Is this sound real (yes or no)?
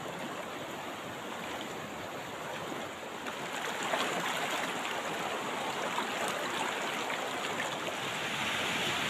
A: yes